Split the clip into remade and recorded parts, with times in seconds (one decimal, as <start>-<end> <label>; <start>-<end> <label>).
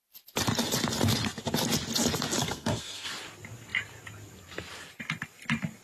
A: 0.0-2.4 recorded; 2.4-3.1 remade; 3.1-5.8 recorded